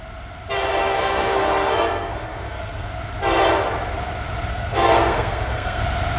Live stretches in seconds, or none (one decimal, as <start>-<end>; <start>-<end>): 0.0-0.8; 2.9-4.5; 5.8-6.2